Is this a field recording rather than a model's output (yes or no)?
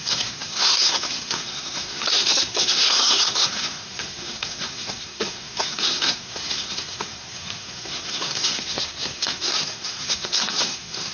no